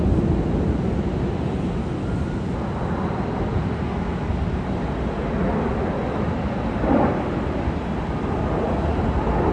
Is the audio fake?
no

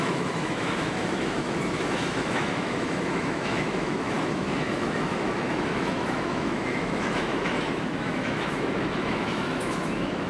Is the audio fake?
yes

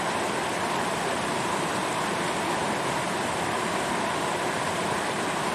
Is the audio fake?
no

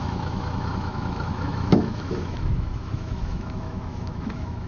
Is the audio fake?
yes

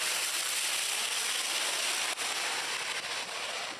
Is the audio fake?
no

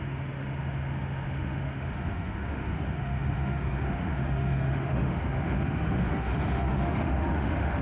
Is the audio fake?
yes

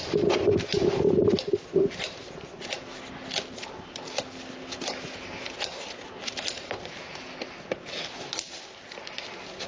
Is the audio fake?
no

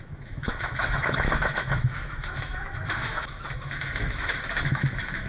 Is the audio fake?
yes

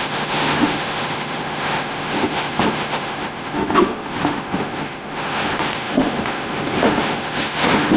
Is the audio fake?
yes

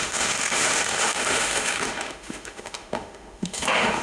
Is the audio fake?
yes